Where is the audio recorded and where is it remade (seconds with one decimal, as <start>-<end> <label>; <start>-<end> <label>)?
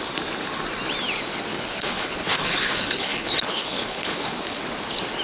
0.0-1.5 recorded; 1.5-4.6 remade; 4.6-5.2 recorded